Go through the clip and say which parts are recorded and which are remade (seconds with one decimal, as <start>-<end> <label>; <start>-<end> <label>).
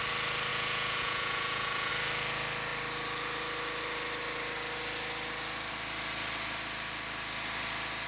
0.0-0.5 recorded; 0.5-1.9 remade; 1.9-8.1 recorded